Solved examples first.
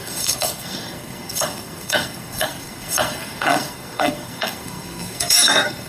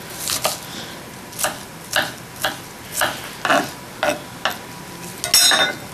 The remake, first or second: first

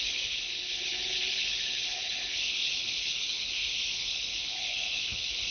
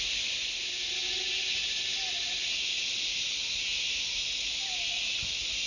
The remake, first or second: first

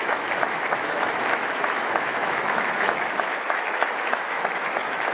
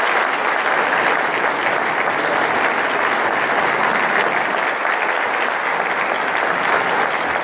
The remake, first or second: first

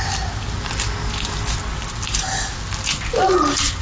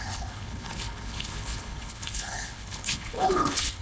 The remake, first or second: second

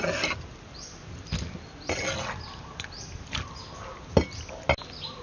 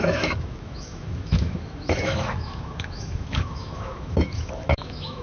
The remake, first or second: second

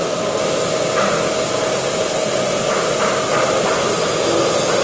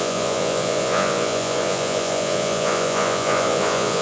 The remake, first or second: second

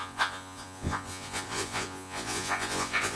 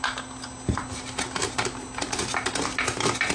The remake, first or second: first